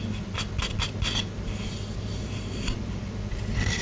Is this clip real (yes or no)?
yes